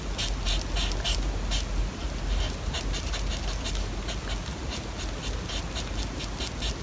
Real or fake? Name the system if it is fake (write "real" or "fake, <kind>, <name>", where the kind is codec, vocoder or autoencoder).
real